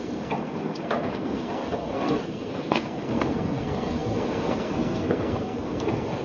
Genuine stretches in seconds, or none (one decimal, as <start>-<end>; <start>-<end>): none